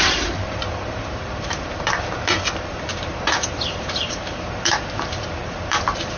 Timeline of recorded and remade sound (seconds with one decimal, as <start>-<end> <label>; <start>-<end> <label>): 0.0-6.2 remade

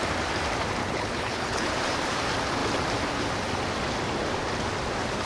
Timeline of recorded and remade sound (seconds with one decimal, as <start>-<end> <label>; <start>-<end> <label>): 0.0-0.8 recorded; 0.8-1.7 remade; 1.7-5.3 recorded

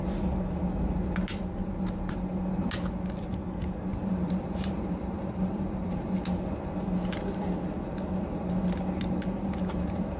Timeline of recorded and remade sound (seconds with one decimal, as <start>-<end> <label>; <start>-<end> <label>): 0.0-1.6 recorded; 1.6-2.1 remade; 2.1-3.9 recorded; 3.9-6.2 remade; 6.2-10.2 recorded

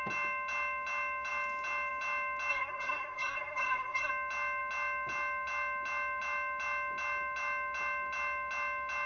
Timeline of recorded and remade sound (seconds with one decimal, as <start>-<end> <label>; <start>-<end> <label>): 0.0-2.5 recorded; 2.5-4.1 remade; 4.1-9.1 recorded

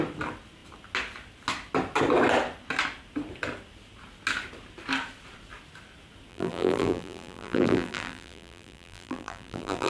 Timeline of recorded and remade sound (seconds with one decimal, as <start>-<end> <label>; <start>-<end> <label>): 0.0-6.3 recorded; 6.3-9.9 remade

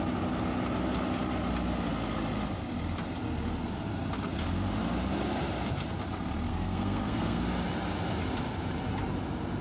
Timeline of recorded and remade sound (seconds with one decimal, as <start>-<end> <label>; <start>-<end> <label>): 0.0-6.5 recorded; 6.5-7.4 remade; 7.4-9.6 recorded

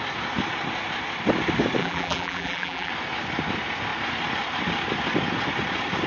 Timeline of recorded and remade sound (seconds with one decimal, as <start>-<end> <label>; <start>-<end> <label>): 0.0-1.8 recorded; 1.8-2.9 remade; 2.9-6.1 recorded